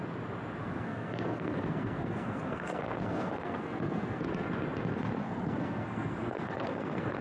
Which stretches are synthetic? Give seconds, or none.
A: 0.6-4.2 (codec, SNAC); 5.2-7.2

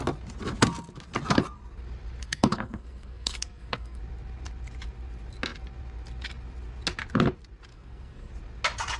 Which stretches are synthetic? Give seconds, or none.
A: 2.2-4.0 (codec, SNAC); 7.7-8.3

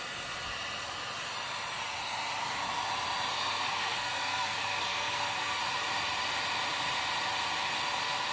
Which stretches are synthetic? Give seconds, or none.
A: 3.3-5.6 (codec, SNAC)

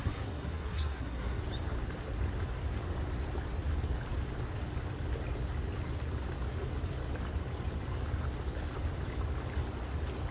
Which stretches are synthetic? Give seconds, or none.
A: 0.0-1.4 (codec, SNAC)

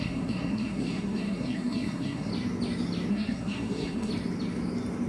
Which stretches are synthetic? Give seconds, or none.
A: 0.0-2.3 (codec, SNAC); 3.1-4.1